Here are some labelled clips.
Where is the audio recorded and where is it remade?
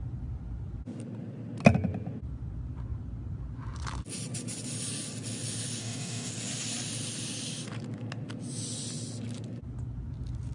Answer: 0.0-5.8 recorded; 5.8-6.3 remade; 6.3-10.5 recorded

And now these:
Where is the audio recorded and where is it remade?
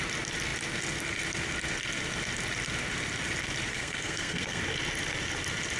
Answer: 0.0-3.7 recorded; 3.7-4.6 remade; 4.6-5.8 recorded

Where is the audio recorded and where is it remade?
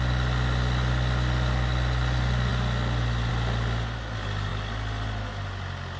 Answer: 0.0-6.0 recorded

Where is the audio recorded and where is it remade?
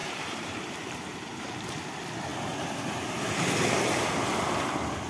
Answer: 0.0-1.5 remade; 1.5-5.1 recorded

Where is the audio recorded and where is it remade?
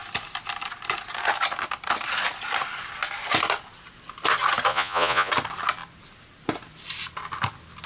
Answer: 0.0-4.7 recorded; 4.7-5.3 remade; 5.3-7.9 recorded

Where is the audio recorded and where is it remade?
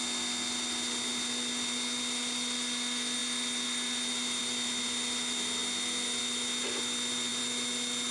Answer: 0.0-8.1 recorded